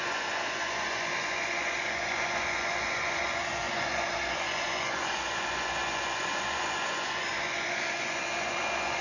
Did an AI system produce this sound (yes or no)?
yes